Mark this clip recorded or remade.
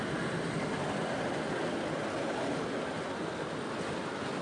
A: remade